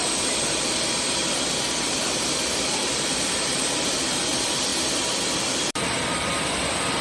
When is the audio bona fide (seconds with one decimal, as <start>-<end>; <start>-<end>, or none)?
4.2-7.0